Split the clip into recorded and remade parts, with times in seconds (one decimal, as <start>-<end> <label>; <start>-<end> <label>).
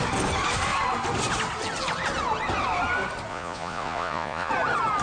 0.0-3.3 recorded; 3.3-4.5 remade; 4.5-5.0 recorded